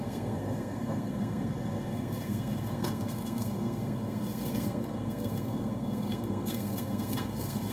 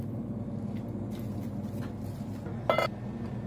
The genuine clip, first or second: second